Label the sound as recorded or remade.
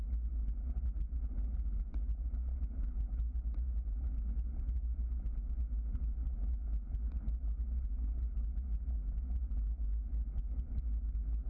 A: recorded